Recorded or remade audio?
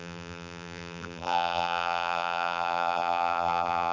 remade